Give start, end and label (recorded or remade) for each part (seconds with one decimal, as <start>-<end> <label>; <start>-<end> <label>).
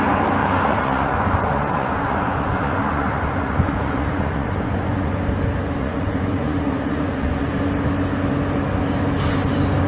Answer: 0.0-0.4 recorded; 0.4-5.1 remade; 5.1-5.8 recorded; 5.8-7.5 remade; 7.5-9.9 recorded